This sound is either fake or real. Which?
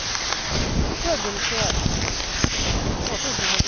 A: real